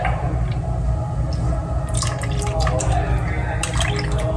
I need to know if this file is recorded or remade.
recorded